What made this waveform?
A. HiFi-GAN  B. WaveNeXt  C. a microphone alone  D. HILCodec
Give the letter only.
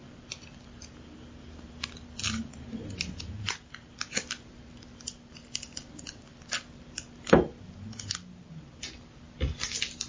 C